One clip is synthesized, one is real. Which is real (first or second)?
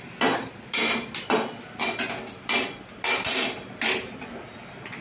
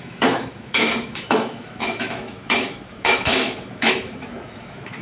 first